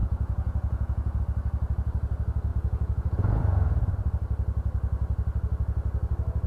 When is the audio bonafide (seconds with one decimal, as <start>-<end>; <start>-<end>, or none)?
1.2-2.5; 3.9-6.5